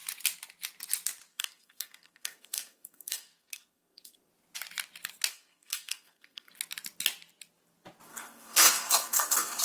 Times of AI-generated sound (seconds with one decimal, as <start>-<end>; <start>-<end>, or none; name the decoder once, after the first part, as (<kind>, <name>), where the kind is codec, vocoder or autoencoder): 1.3-4.3 (codec, SNAC); 5.3-6.5; 8.1-9.6